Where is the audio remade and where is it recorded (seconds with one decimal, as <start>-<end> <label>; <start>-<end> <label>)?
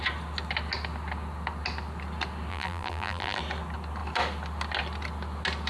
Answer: 0.0-2.5 recorded; 2.5-3.4 remade; 3.4-5.7 recorded